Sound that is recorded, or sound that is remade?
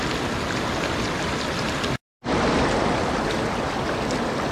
recorded